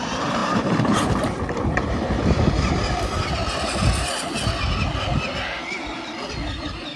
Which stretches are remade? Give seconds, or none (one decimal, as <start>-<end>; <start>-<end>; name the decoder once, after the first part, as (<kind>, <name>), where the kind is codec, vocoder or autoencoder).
0.0-3.4 (vocoder, BigVGAN v2)